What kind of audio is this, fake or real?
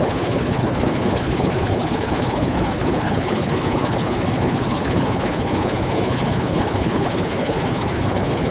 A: fake